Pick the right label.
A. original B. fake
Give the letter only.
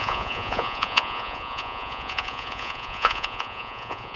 B